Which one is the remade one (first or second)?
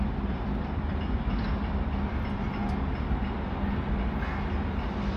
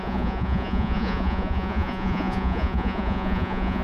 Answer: second